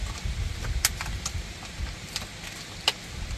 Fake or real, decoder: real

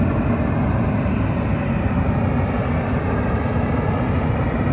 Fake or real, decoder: real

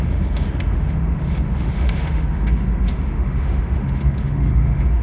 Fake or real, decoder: fake, autoencoder, DAC-VAE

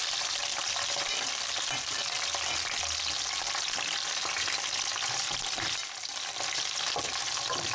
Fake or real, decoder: real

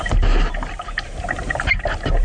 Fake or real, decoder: real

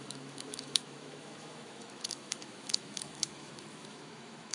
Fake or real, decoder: fake, autoencoder, DAC-VAE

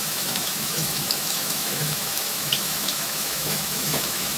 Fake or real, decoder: fake, autoencoder, DAC-VAE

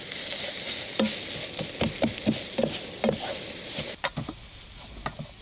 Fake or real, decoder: real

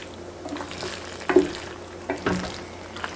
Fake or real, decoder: real